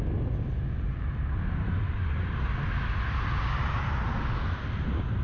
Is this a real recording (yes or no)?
yes